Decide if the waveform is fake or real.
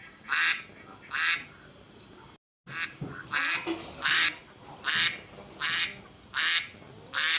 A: real